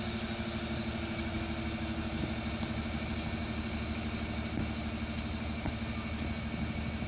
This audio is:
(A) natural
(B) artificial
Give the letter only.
A